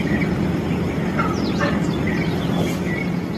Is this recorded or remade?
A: recorded